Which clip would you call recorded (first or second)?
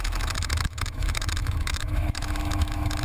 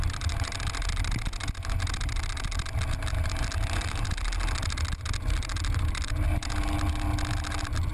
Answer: second